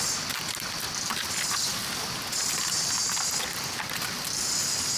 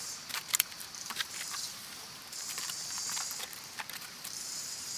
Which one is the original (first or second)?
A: first